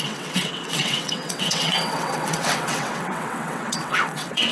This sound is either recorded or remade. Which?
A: remade